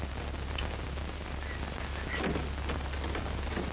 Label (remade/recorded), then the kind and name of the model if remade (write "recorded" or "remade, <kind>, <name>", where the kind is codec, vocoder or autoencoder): recorded